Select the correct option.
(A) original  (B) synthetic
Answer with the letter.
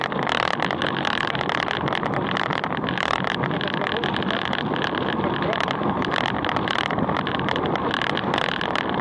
A